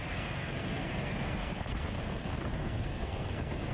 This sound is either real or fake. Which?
fake